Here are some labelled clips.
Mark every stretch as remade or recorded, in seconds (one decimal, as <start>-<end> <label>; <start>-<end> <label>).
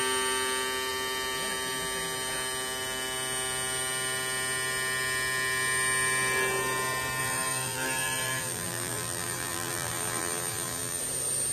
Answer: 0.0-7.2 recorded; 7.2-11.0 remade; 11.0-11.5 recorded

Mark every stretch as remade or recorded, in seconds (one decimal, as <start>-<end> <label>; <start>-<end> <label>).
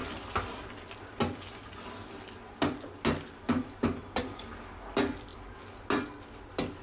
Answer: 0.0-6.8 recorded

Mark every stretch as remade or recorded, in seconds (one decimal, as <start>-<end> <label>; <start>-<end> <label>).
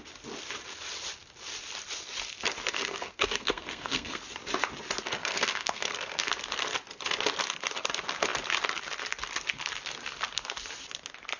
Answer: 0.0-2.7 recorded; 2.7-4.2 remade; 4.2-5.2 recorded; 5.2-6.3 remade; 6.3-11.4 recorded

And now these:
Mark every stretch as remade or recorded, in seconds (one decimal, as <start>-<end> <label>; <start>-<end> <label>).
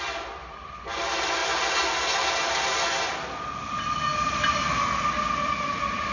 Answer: 0.0-1.4 remade; 1.4-5.1 recorded; 5.1-6.1 remade